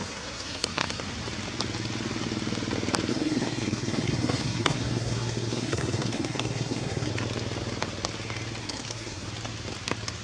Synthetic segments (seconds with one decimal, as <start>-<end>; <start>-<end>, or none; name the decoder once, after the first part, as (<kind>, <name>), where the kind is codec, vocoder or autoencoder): 0.0-1.0 (codec, SNAC); 3.1-7.1; 8.6-9.3